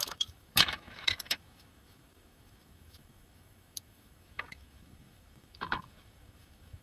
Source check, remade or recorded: remade